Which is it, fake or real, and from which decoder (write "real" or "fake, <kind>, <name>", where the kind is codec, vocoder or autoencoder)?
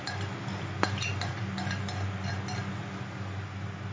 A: real